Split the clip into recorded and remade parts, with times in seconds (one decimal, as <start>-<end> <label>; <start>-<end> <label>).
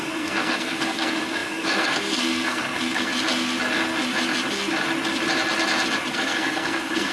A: 0.0-3.1 remade; 3.1-6.1 recorded; 6.1-7.1 remade